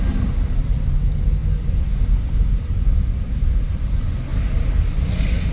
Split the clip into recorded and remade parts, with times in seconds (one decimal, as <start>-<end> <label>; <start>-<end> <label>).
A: 0.0-1.4 remade; 1.4-2.5 recorded; 2.5-4.3 remade; 4.3-5.1 recorded; 5.1-5.5 remade